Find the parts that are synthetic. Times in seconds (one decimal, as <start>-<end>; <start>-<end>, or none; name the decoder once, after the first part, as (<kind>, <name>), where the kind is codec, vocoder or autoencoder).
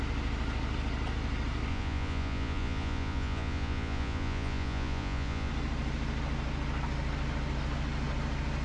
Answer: 1.7-5.5 (vocoder, Vocos)